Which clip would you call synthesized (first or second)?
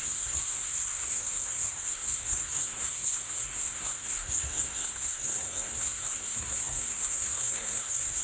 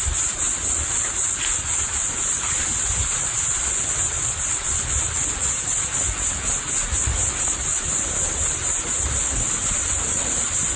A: first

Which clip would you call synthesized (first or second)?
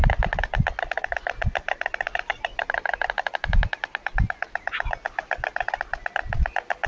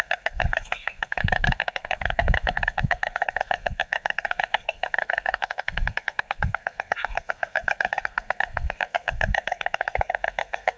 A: second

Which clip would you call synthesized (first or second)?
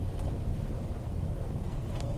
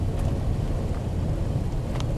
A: first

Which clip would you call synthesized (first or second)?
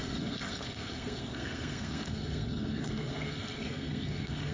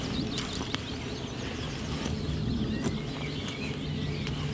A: first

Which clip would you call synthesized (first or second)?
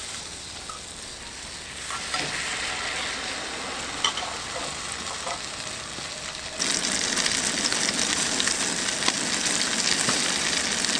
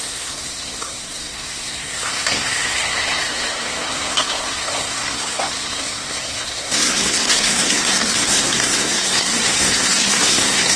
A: second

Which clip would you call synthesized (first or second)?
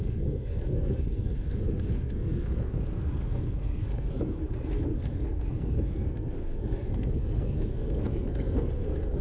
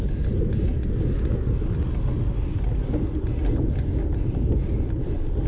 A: first